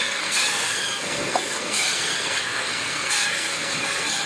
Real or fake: fake